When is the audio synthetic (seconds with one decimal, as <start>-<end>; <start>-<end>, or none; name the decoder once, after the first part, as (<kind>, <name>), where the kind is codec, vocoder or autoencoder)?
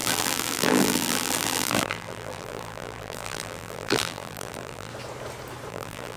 0.0-4.9 (vocoder, BigVGAN v2); 5.7-6.2